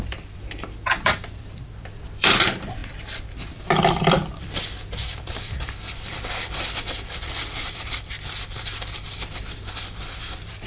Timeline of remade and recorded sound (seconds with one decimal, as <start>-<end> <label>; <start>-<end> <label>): 0.0-2.8 remade; 2.8-3.5 recorded; 3.5-10.7 remade